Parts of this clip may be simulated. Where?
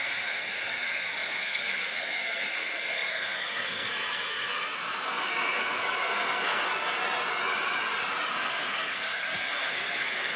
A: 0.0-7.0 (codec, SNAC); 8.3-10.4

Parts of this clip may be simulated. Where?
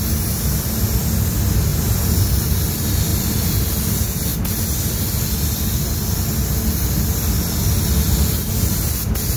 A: none